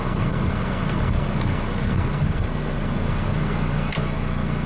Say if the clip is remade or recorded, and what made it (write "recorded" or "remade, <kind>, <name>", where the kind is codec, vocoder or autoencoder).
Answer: remade, codec, SNAC